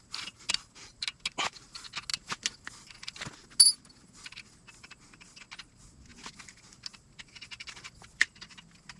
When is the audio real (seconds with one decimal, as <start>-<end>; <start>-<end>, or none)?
0.0-9.0